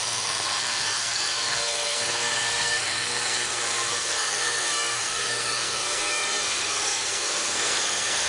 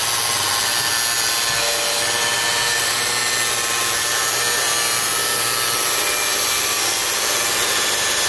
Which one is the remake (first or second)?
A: first